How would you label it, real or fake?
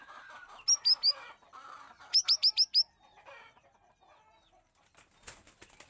real